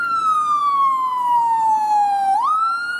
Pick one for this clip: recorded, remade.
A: remade